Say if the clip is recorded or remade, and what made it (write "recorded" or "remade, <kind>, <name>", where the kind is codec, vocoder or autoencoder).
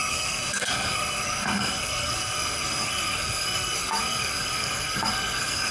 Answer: remade, codec, SNAC